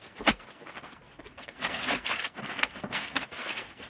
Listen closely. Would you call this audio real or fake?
fake